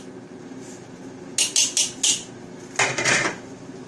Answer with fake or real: real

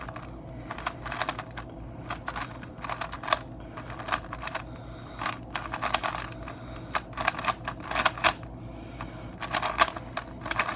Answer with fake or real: real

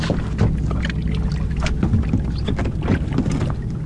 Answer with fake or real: real